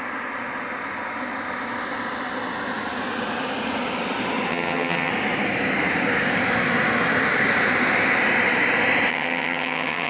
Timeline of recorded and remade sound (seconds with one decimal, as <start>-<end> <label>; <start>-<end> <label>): 0.0-4.5 recorded; 4.5-5.1 remade; 5.1-9.1 recorded; 9.1-10.1 remade